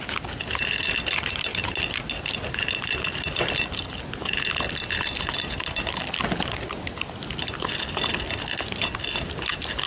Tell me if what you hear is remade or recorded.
recorded